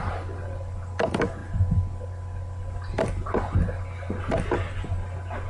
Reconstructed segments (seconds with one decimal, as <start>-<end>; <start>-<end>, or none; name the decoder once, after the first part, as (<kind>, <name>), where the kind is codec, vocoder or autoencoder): none